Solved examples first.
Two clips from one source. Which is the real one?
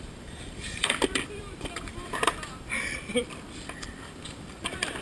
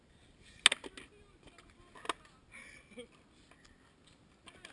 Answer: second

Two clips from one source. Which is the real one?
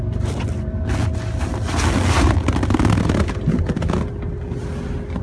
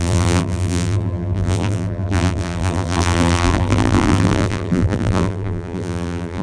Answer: first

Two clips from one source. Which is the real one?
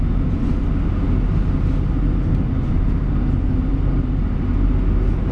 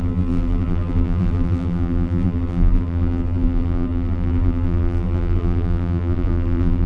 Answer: first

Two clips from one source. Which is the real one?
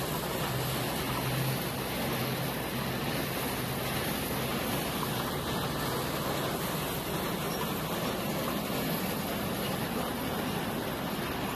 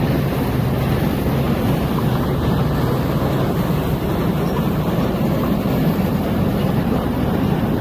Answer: first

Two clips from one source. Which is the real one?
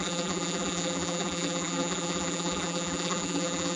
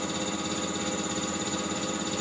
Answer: second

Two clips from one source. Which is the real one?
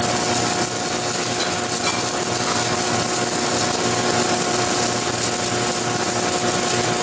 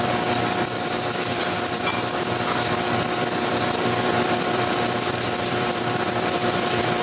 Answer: first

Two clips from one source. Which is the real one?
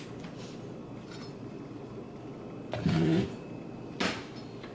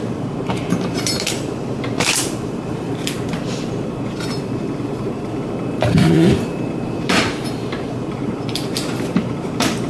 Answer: first